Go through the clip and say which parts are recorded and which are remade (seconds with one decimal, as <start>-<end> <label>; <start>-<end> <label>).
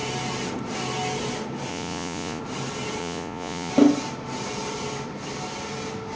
0.0-1.7 recorded; 1.7-2.4 remade; 2.4-3.0 recorded; 3.0-3.7 remade; 3.7-6.2 recorded